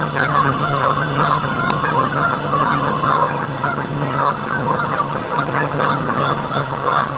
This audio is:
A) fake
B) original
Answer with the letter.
A